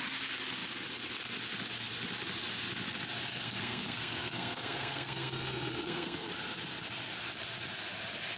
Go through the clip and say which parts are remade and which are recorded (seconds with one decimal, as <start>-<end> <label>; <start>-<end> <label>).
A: 0.0-3.3 recorded; 3.3-6.3 remade; 6.3-8.4 recorded